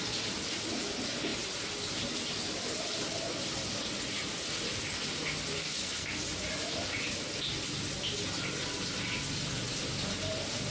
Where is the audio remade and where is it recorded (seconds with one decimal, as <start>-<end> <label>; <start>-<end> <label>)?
0.0-5.6 recorded; 5.6-6.2 remade; 6.2-10.7 recorded